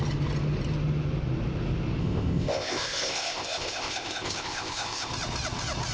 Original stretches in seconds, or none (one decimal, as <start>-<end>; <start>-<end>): 0.0-2.0; 5.1-5.9